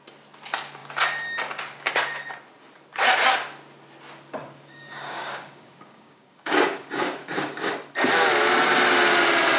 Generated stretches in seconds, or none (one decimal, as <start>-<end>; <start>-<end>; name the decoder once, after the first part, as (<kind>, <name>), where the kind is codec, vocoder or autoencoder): 4.4-7.7 (codec, DAC)